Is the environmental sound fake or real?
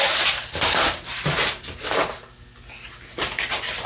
real